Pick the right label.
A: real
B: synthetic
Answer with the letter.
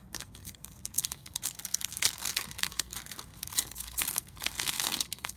B